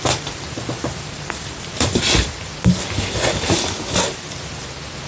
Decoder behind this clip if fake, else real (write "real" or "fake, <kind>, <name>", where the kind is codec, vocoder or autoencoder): real